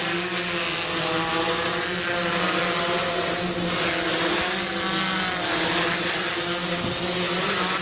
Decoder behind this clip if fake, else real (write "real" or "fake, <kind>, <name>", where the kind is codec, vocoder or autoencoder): real